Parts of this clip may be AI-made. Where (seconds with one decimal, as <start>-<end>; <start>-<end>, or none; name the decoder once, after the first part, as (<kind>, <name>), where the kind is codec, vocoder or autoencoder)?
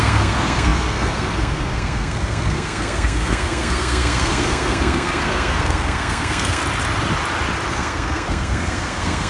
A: 0.0-6.6 (codec, SNAC); 7.7-9.3